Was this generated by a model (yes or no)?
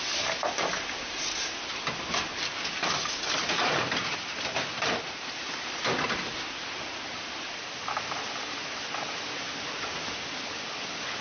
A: no